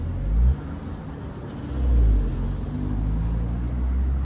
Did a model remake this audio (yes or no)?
no